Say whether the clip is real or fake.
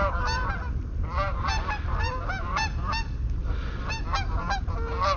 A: real